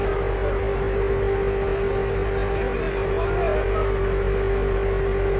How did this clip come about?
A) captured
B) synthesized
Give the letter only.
A